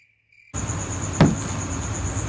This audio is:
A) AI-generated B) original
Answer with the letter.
B